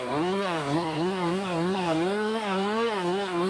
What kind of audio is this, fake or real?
fake